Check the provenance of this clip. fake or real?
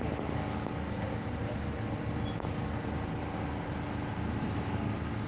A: real